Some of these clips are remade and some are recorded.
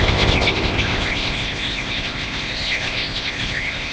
remade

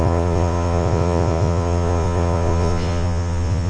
remade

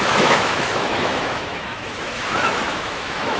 remade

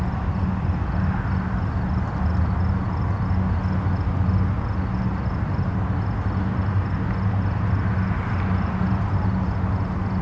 recorded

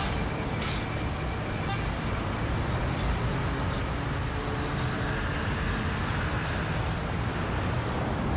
recorded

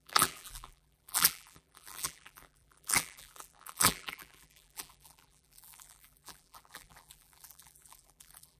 remade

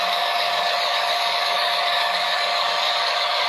remade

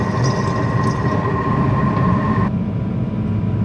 recorded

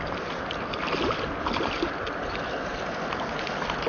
recorded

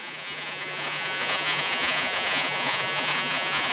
remade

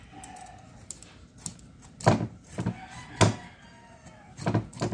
recorded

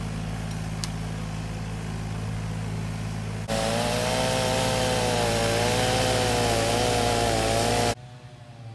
recorded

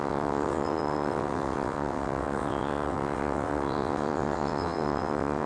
remade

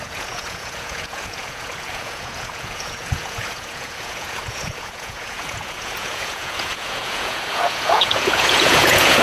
remade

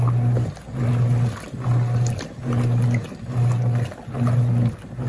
recorded